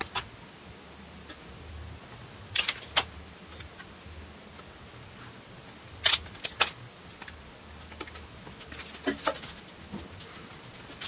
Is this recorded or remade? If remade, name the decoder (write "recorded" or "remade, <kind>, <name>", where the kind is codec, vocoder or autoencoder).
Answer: recorded